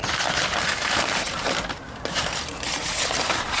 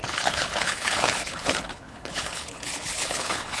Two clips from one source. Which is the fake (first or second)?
second